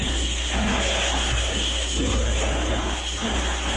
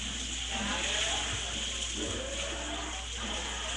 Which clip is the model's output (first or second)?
first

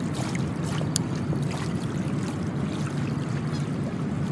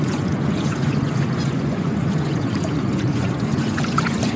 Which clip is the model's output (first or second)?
second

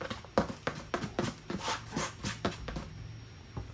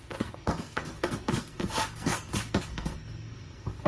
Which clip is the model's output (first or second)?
second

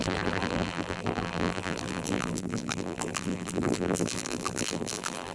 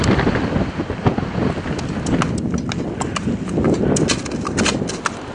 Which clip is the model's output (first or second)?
first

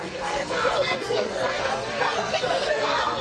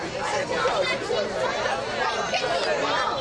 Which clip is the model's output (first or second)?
first